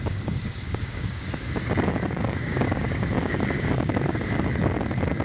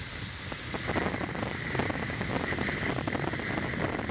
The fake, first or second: first